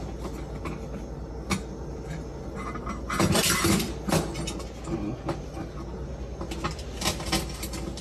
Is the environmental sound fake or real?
real